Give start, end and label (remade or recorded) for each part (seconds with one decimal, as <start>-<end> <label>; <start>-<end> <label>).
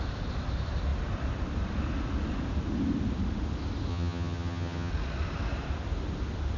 0.0-3.9 recorded; 3.9-4.9 remade; 4.9-6.6 recorded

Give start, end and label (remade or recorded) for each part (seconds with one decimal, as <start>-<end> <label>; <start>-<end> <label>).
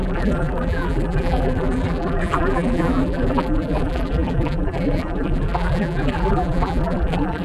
0.0-7.4 remade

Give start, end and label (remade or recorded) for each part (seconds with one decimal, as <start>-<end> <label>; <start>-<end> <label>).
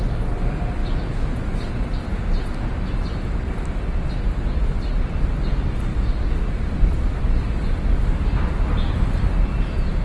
0.0-10.0 recorded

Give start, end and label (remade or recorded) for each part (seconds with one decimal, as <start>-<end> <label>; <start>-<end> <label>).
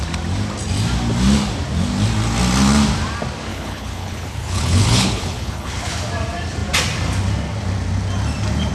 0.0-3.5 recorded; 3.5-5.9 remade; 5.9-8.7 recorded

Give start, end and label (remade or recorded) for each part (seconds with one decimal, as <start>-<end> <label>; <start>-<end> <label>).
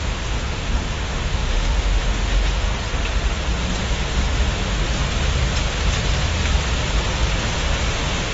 0.0-2.7 remade; 2.7-3.7 recorded; 3.7-4.7 remade; 4.7-7.9 recorded; 7.9-8.3 remade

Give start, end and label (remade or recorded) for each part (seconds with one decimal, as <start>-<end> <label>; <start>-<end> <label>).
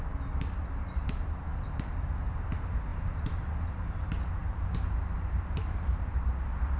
0.0-2.9 recorded; 2.9-3.5 remade; 3.5-4.4 recorded; 4.4-6.3 remade; 6.3-6.8 recorded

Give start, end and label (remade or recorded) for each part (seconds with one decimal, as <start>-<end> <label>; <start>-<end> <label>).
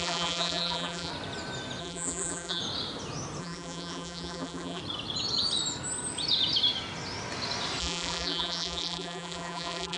0.0-1.1 remade; 1.1-1.8 recorded; 1.8-2.6 remade; 2.6-3.4 recorded; 3.4-4.8 remade; 4.8-7.8 recorded; 7.8-10.0 remade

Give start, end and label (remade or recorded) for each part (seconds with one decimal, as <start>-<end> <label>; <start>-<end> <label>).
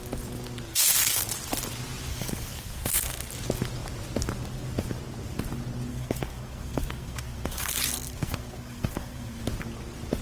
0.0-0.7 recorded; 0.7-1.2 remade; 1.2-2.1 recorded; 2.1-3.3 remade; 3.3-5.9 recorded; 5.9-9.4 remade; 9.4-10.2 recorded